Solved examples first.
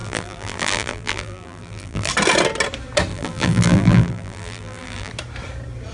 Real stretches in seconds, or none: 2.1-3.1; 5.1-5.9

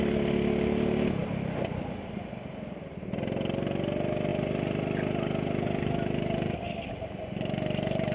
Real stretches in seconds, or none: 0.0-8.1

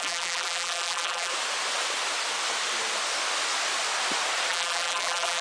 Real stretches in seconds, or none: 1.3-4.5

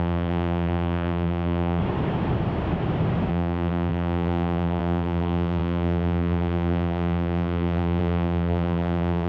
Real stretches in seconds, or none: 1.8-3.3

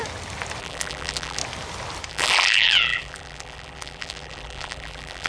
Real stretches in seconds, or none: 0.0-0.6; 1.4-2.1

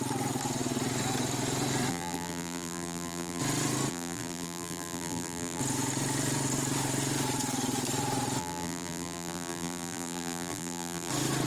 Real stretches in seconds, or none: 0.0-1.9; 3.4-3.9; 5.6-8.4; 11.1-11.5

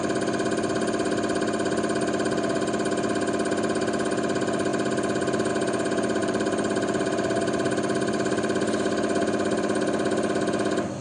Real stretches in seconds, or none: 0.0-6.2; 7.4-11.0

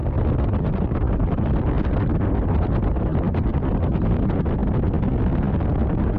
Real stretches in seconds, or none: 0.0-6.2